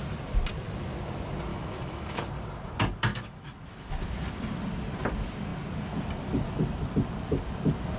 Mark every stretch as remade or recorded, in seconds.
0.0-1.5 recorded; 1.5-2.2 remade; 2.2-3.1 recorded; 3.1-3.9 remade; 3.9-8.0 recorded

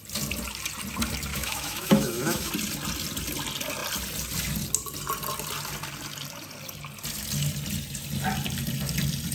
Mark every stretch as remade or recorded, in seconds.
0.0-1.3 recorded; 1.3-2.5 remade; 2.5-9.3 recorded

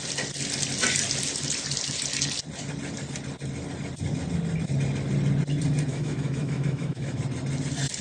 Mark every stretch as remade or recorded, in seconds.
0.0-5.9 recorded; 5.9-7.2 remade; 7.2-8.0 recorded